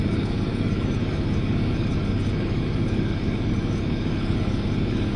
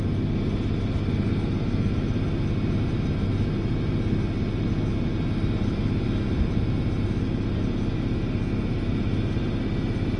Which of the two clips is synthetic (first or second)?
first